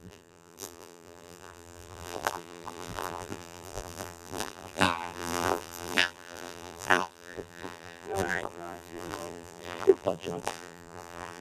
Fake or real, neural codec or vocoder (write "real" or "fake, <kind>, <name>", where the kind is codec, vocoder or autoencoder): fake, vocoder, BigVGAN v2